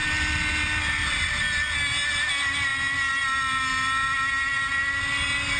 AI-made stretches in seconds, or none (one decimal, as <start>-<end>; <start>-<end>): none